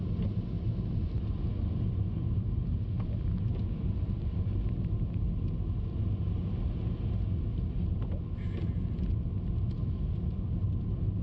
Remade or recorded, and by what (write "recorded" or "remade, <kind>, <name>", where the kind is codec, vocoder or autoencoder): recorded